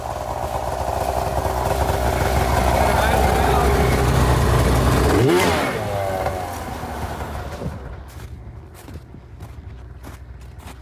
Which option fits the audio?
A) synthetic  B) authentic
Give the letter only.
B